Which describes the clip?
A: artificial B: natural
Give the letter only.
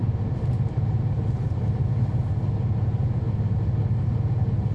B